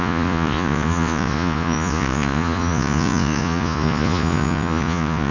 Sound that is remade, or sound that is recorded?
remade